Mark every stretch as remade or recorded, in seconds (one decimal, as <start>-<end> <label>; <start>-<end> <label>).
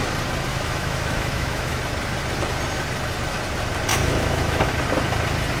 0.0-0.5 recorded; 0.5-1.8 remade; 1.8-3.9 recorded; 3.9-4.7 remade; 4.7-5.6 recorded